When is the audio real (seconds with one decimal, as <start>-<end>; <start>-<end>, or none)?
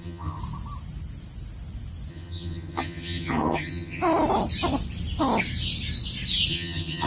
0.4-2.1; 4.0-6.5